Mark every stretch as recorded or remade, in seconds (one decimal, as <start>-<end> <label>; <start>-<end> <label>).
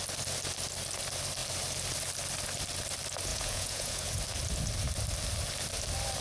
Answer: 0.0-3.3 recorded; 3.3-4.2 remade; 4.2-6.2 recorded